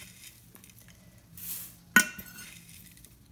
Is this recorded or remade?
recorded